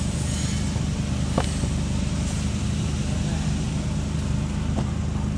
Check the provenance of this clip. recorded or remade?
recorded